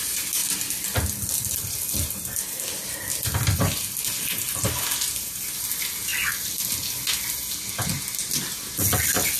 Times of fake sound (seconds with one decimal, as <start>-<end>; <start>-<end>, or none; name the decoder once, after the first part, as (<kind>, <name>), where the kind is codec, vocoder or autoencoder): none